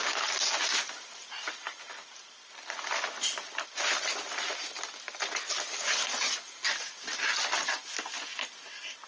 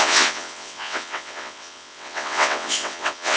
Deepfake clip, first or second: second